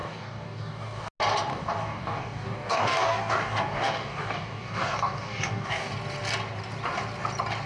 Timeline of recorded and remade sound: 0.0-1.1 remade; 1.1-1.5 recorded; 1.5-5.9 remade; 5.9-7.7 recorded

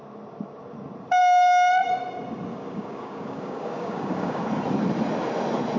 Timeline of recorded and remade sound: 0.0-1.2 recorded; 1.2-1.7 remade; 1.7-2.5 recorded; 2.5-4.4 remade; 4.4-5.8 recorded

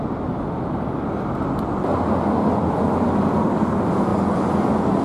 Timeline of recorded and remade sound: 0.0-5.0 recorded

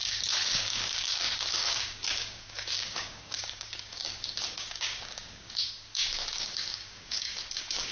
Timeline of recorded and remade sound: 0.0-7.9 remade